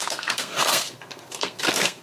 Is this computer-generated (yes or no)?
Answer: yes